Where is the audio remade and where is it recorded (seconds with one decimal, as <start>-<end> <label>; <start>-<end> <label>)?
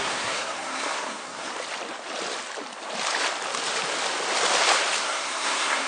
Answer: 0.0-1.5 remade; 1.5-5.0 recorded; 5.0-5.9 remade